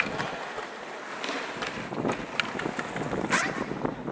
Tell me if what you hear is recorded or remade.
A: recorded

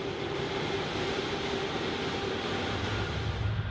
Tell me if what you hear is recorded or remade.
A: recorded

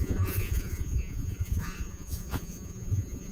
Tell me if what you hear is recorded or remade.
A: remade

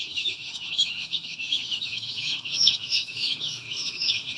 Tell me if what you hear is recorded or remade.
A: remade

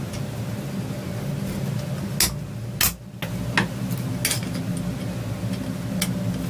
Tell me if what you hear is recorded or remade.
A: recorded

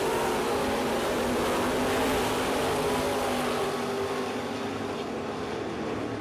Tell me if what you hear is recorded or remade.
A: recorded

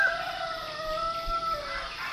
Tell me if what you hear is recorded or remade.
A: recorded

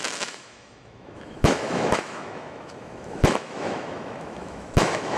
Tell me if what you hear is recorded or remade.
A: remade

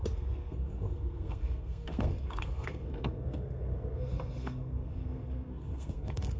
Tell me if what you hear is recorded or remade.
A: remade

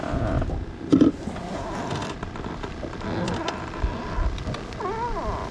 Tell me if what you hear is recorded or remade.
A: recorded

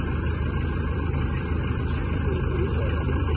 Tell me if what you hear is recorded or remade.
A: remade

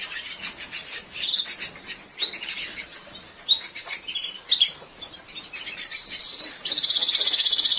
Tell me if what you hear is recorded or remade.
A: remade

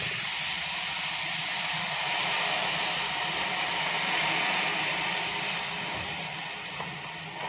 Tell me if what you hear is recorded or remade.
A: recorded